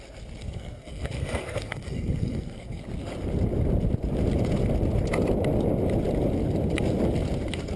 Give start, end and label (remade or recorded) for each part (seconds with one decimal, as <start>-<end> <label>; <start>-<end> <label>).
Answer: 0.0-0.4 recorded; 0.4-2.8 remade; 2.8-7.8 recorded